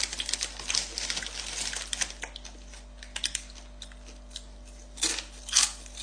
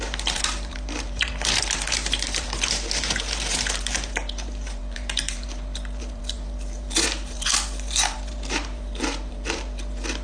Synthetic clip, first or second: second